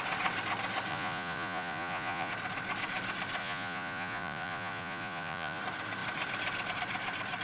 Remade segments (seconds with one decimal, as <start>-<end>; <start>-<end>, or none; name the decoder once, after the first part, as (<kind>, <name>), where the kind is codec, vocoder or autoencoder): 0.9-2.3 (vocoder, Vocos); 3.4-5.6